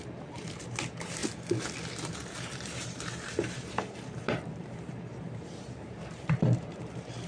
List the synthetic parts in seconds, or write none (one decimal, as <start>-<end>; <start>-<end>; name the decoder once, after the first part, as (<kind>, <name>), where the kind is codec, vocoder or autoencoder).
0.0-1.2 (vocoder, BigVGAN v2); 2.0-7.3